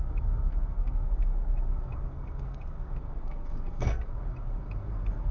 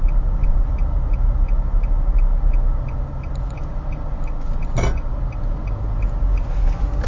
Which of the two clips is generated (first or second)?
first